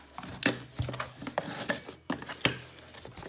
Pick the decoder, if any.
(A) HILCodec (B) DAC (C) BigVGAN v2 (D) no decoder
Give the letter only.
D